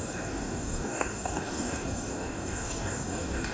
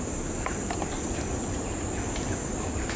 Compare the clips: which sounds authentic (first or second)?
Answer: second